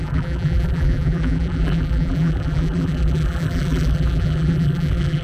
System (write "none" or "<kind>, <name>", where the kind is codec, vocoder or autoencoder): vocoder, BigVGAN v2